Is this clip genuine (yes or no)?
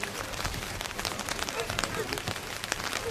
no